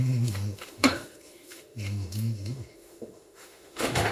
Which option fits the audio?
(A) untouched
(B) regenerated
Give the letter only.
B